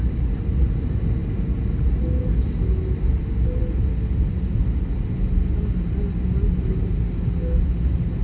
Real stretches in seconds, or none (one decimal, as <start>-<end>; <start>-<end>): 0.0-8.2